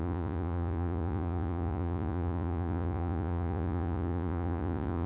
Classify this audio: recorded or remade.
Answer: remade